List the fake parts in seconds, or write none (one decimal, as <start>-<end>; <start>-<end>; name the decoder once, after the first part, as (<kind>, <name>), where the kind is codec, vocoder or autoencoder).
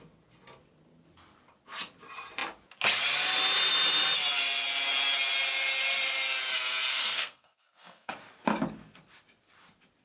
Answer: 6.9-8.1 (codec, SNAC)